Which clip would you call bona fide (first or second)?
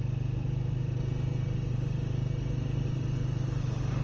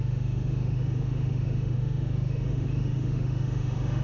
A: first